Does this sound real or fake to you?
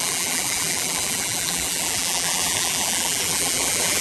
fake